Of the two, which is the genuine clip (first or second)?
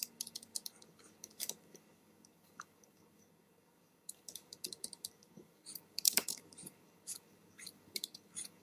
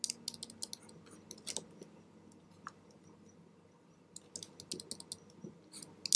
second